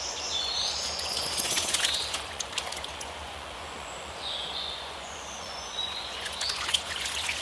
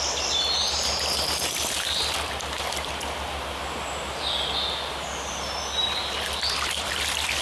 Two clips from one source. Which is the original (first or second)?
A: second